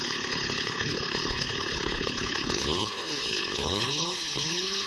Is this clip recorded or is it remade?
remade